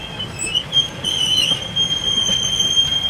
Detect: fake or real real